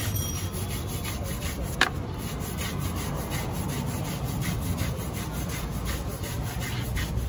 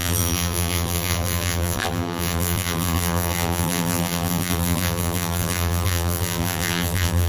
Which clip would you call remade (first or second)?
second